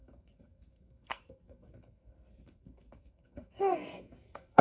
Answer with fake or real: fake